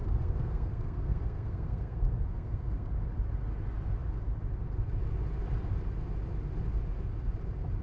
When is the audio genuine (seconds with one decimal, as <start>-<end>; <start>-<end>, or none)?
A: 2.9-7.8